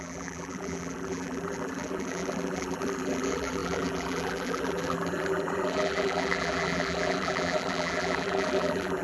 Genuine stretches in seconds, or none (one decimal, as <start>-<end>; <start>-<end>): none